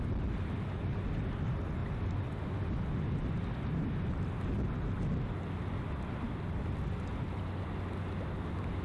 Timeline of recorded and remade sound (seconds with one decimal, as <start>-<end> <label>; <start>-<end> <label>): 0.0-8.8 recorded